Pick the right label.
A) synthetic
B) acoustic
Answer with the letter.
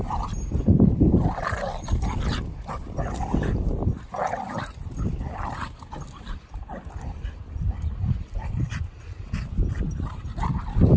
A